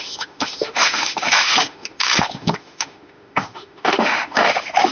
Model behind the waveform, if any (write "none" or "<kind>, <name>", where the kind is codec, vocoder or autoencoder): autoencoder, DAC-VAE